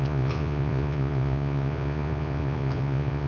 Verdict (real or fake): fake